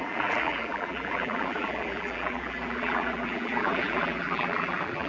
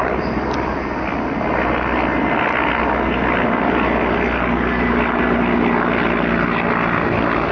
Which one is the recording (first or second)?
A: second